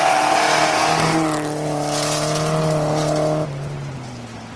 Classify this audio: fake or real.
real